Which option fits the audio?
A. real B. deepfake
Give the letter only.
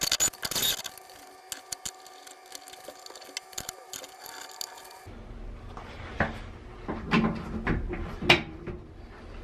A